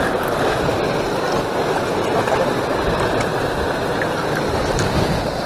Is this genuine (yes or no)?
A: yes